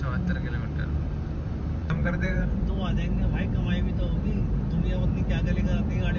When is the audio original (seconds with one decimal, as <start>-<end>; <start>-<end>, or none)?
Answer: 0.0-1.8; 2.7-6.2